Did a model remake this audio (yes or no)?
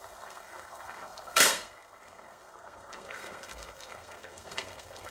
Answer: yes